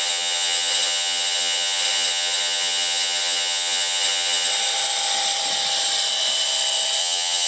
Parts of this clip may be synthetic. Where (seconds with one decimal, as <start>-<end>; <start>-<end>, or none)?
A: 0.0-4.5; 7.0-7.5